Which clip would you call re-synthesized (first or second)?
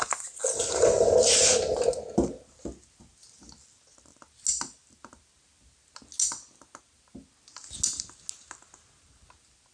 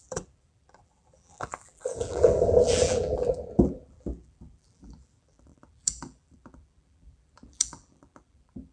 second